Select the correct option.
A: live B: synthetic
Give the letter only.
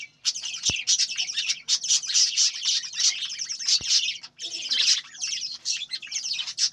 A